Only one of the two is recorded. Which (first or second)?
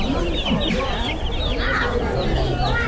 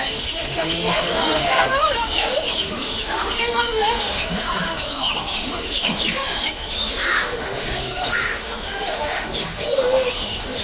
first